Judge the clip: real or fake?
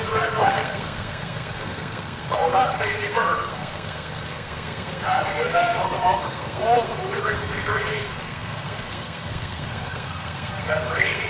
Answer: fake